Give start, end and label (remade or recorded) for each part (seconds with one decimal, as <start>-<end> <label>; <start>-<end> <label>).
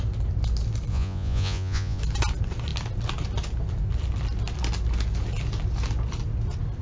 0.0-0.9 recorded; 0.9-2.0 remade; 2.0-6.8 recorded